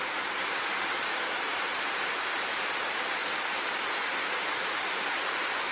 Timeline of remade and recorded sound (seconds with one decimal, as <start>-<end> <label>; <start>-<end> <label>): 0.0-5.7 recorded